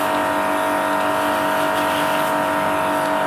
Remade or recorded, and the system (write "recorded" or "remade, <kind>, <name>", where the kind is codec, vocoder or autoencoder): recorded